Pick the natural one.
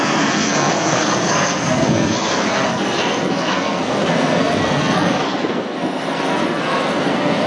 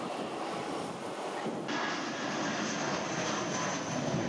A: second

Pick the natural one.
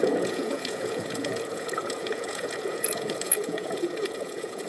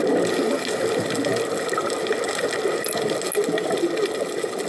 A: second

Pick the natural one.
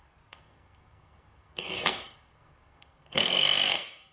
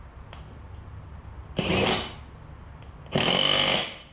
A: second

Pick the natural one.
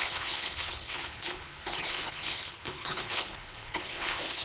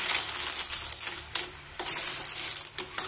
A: second